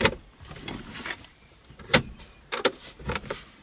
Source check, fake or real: fake